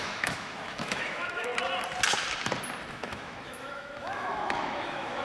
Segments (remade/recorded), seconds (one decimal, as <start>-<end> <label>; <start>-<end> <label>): 0.0-1.5 remade; 1.5-2.9 recorded; 2.9-5.2 remade